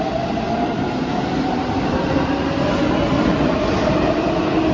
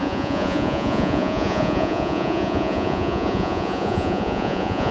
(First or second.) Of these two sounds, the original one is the first